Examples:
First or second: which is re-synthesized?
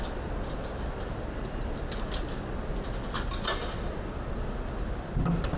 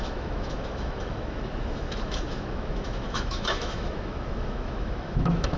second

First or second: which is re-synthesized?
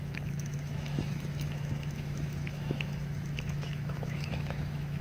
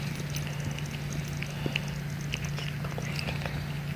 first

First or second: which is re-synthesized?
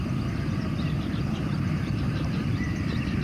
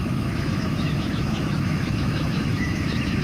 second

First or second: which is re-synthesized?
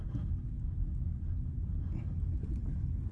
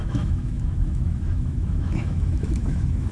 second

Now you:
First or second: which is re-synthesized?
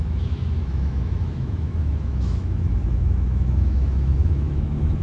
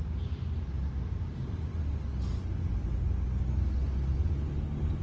first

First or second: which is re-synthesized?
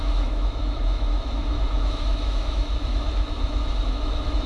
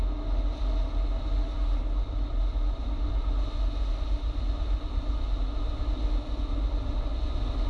first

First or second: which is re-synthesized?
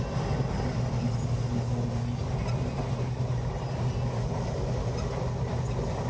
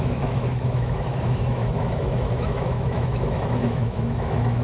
second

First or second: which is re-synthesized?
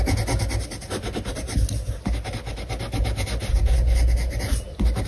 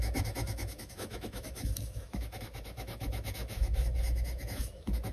second